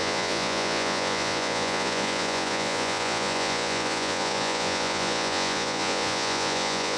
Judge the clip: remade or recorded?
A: remade